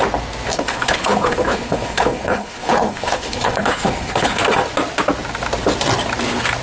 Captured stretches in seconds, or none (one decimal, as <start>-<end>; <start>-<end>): 0.0-0.5; 4.4-6.6

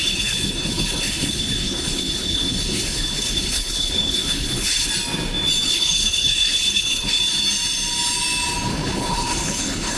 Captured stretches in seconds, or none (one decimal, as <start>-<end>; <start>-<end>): 4.9-5.7; 7.2-8.7

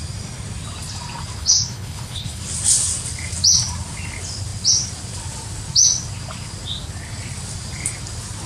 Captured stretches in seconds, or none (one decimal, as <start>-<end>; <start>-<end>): 0.0-1.4; 2.4-8.5

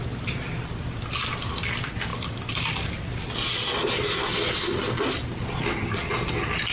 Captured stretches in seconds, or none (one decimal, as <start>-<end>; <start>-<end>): 0.0-6.7

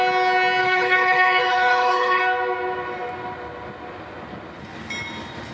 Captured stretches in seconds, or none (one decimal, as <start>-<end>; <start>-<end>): 0.0-0.6; 2.2-5.5

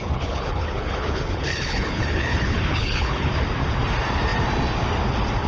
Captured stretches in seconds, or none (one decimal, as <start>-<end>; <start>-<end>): 3.3-5.5